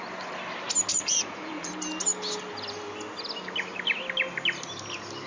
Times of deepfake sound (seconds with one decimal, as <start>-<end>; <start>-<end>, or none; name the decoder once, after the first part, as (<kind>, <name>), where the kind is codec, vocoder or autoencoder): 0.9-1.7 (vocoder, Vocos)